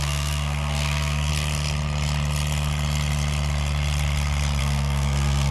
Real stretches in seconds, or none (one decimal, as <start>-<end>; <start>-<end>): 1.3-4.6